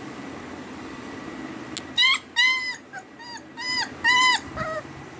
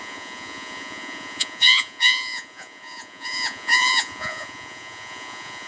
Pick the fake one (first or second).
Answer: second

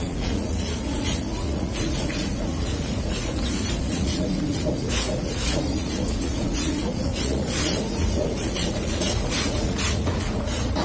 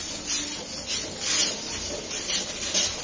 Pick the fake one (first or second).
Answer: first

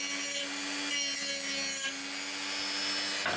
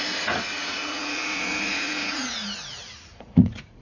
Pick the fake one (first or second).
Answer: second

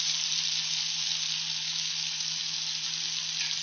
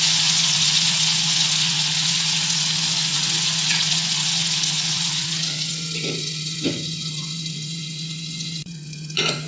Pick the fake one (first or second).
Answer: second